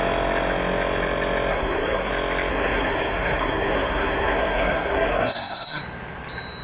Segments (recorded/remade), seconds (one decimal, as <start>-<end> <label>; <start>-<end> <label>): 0.0-1.5 recorded; 1.5-2.1 remade; 2.1-2.5 recorded; 2.5-5.8 remade; 5.8-6.6 recorded